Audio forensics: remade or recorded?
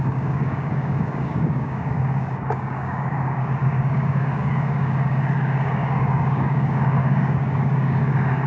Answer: remade